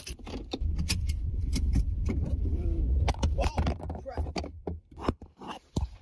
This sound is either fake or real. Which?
fake